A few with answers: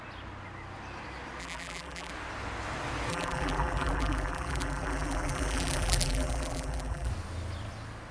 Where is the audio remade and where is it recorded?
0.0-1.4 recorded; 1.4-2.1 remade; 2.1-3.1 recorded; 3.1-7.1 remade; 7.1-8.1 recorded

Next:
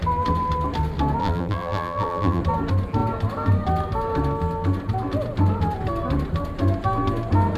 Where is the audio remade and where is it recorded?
0.0-1.2 recorded; 1.2-2.4 remade; 2.4-7.6 recorded

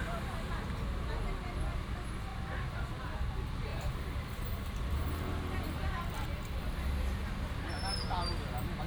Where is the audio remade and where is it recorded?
0.0-2.3 recorded; 2.3-3.3 remade; 3.3-3.7 recorded; 3.7-5.1 remade; 5.1-5.8 recorded; 5.8-6.6 remade; 6.6-8.9 recorded

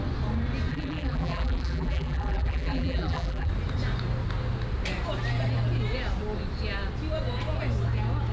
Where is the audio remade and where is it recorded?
0.0-0.7 recorded; 0.7-3.5 remade; 3.5-8.3 recorded